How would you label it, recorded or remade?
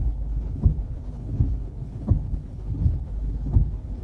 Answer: remade